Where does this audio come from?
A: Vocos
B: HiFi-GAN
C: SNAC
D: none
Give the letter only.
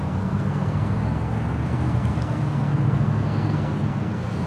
C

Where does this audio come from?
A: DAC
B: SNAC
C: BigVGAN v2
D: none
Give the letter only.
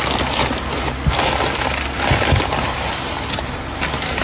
D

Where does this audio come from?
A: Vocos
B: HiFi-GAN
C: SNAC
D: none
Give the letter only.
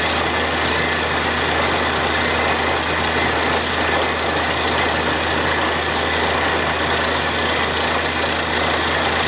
D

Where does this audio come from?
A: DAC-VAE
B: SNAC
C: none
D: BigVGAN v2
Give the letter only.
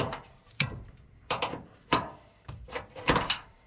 D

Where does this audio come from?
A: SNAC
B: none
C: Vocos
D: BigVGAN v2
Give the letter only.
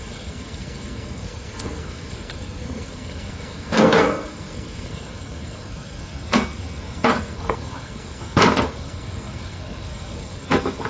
A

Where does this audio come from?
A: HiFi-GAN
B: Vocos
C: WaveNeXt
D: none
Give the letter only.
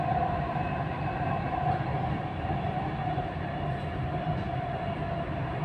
D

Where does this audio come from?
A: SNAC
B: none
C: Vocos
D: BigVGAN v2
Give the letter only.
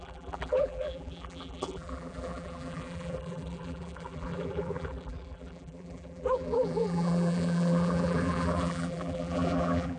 D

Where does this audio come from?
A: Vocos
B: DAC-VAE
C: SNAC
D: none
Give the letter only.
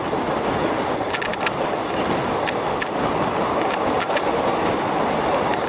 D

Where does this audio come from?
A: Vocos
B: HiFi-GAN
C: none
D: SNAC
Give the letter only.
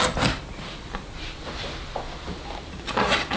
C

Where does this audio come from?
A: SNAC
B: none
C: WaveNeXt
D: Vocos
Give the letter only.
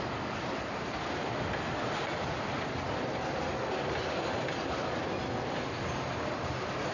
B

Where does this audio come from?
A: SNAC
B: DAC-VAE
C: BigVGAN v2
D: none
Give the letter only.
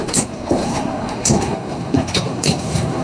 A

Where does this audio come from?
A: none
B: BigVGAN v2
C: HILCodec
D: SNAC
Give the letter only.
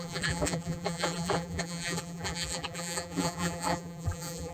B